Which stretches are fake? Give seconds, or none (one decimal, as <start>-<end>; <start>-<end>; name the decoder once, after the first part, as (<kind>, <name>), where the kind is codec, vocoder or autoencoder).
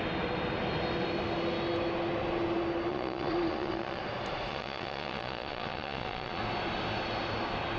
2.9-4.0 (vocoder, Vocos); 4.5-6.4